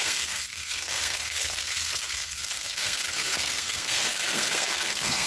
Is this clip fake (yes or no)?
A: yes